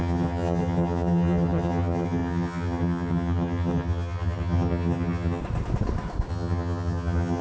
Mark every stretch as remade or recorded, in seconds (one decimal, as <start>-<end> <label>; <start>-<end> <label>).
0.0-5.4 remade; 5.4-6.3 recorded; 6.3-7.4 remade